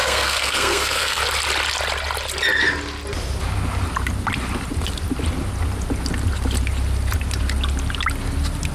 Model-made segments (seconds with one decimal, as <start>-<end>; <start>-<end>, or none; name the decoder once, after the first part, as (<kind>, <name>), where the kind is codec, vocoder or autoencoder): 0.0-1.2 (codec, SNAC)